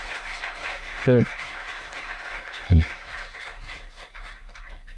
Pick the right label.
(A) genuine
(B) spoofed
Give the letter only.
B